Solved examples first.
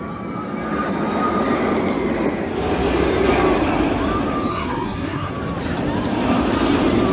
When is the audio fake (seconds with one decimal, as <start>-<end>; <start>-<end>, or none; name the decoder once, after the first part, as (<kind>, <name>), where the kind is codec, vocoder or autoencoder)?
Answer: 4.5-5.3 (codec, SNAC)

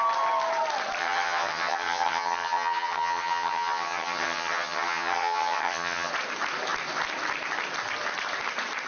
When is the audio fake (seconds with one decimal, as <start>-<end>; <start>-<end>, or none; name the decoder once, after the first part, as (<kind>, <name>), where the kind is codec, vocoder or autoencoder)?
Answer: 1.0-6.1 (vocoder, HiFi-GAN)

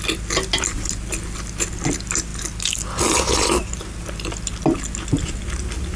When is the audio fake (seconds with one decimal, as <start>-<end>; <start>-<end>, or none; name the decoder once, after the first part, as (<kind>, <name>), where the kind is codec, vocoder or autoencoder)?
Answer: none